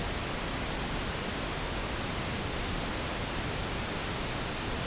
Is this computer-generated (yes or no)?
no